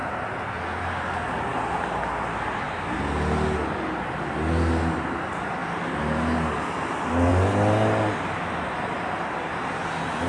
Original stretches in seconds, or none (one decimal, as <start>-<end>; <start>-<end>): 0.0-10.3